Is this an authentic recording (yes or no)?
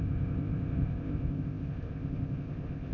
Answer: no